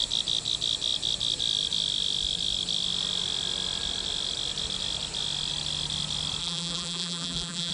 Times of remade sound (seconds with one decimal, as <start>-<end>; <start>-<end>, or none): 6.4-7.7

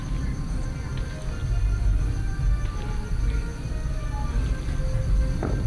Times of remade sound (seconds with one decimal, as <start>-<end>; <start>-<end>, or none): none